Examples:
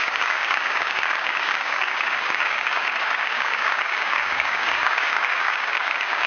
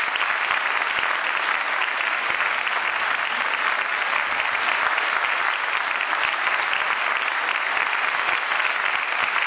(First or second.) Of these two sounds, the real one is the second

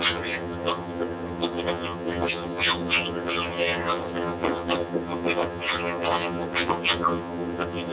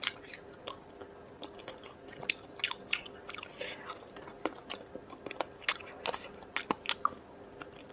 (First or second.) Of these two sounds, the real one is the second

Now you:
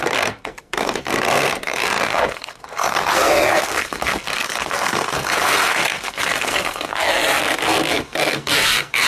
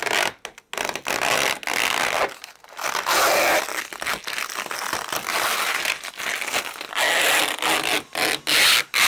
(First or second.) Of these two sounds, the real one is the second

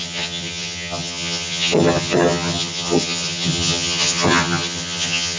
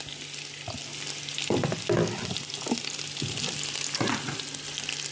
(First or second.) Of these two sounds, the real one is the second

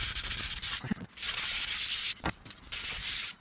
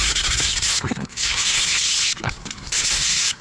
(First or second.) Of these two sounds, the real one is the first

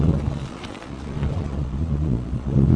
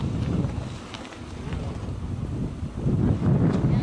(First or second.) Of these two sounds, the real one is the second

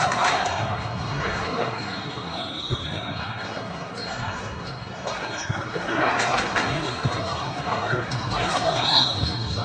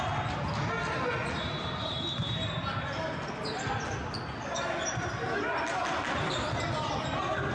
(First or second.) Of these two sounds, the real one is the second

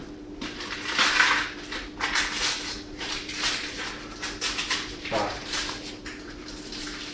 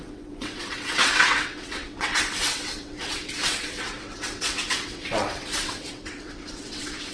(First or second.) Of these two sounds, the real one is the first